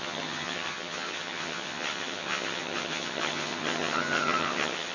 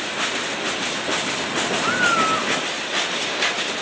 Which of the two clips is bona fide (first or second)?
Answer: second